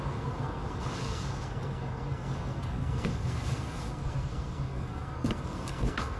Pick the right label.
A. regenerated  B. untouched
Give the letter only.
A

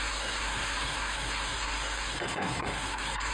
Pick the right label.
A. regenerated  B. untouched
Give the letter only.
A